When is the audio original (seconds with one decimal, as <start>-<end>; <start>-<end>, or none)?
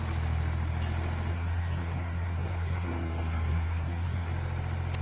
0.0-1.3; 4.3-5.0